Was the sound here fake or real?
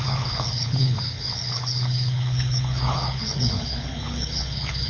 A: fake